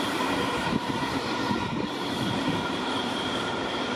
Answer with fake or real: fake